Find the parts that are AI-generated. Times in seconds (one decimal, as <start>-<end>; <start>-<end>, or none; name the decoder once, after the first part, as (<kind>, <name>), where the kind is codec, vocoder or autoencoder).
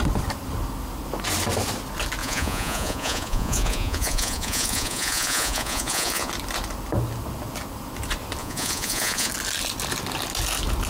2.2-6.3 (vocoder, Vocos); 8.4-9.3